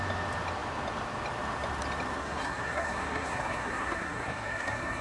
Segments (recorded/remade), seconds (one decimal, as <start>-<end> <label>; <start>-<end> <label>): 0.0-2.2 recorded; 2.2-5.0 remade